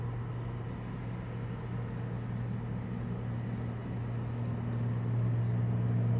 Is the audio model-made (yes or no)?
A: no